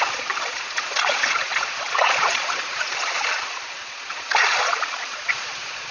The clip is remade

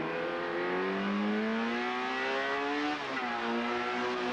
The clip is recorded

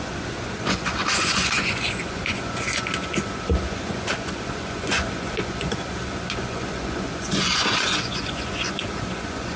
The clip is remade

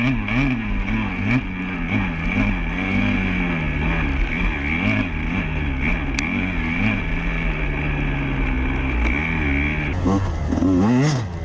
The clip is recorded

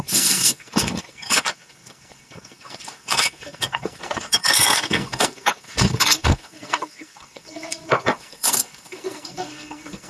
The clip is remade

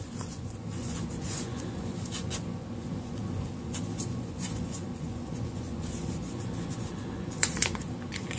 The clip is remade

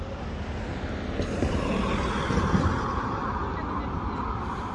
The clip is recorded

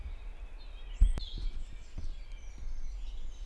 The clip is recorded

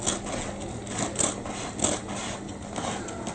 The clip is recorded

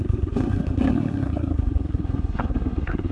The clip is remade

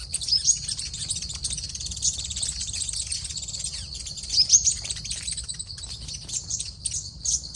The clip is remade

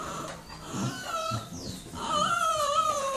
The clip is remade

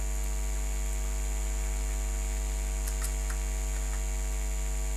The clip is recorded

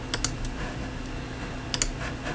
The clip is recorded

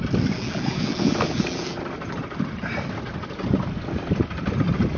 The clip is recorded